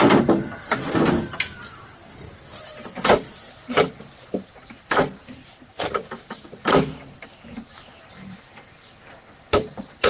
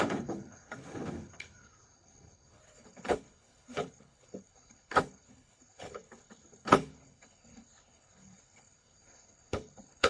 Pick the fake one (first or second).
second